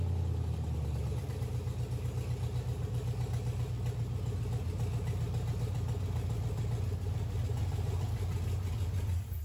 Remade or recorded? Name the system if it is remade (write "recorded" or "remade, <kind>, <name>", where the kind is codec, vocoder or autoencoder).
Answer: recorded